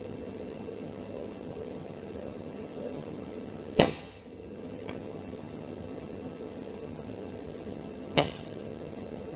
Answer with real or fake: fake